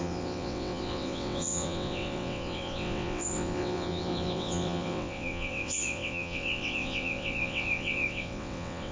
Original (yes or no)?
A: no